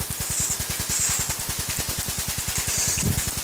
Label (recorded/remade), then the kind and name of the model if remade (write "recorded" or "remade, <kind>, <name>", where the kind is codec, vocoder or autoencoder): recorded